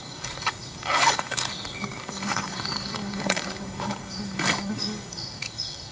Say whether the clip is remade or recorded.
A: remade